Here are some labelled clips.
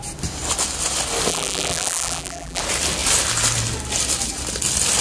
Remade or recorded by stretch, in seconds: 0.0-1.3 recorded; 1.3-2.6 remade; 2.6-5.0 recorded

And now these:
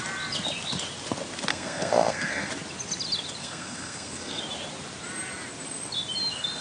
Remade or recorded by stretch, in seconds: 0.0-1.5 recorded; 1.5-2.5 remade; 2.5-3.4 recorded; 3.4-4.4 remade; 4.4-6.6 recorded